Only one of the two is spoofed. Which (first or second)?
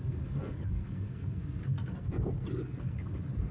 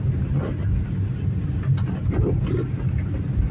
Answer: first